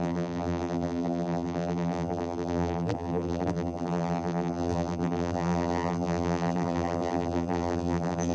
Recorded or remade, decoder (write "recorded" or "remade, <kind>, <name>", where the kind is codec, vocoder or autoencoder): remade, vocoder, BigVGAN v2